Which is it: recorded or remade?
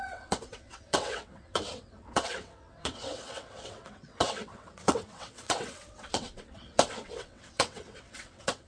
remade